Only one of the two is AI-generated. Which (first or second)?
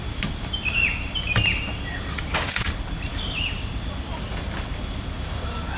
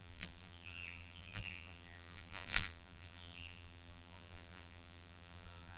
second